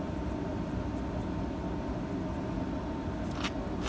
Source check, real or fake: real